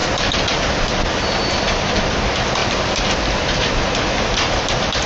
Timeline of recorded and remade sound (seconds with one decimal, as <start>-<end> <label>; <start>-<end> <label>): 0.0-1.8 remade; 1.8-2.6 recorded; 2.6-3.7 remade; 3.7-5.1 recorded